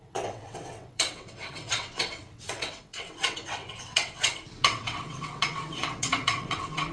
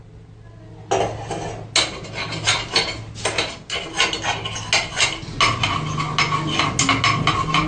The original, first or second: second